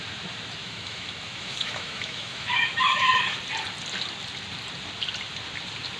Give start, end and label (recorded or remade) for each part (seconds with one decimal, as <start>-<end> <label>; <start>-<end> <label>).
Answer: 0.0-0.6 recorded; 0.6-3.4 remade; 3.4-6.0 recorded